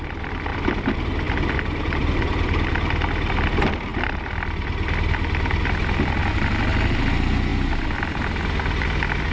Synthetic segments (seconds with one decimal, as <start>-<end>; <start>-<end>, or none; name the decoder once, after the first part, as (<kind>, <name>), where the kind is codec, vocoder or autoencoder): 0.5-1.5 (vocoder, BigVGAN v2); 2.0-2.5; 3.9-5.6